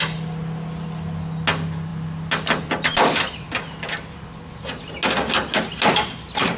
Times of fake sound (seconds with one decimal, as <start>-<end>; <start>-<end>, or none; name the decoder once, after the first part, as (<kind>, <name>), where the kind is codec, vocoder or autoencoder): none